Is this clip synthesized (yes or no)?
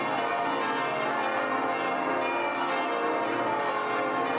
no